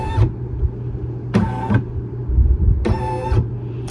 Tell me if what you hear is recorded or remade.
recorded